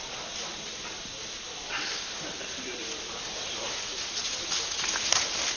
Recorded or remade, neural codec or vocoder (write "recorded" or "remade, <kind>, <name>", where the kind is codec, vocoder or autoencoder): recorded